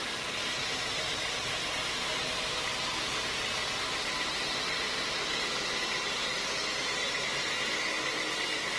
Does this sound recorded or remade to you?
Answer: recorded